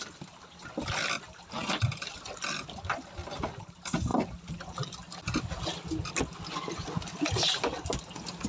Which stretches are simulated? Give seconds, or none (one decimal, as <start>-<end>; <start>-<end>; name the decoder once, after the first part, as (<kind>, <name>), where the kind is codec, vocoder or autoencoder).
none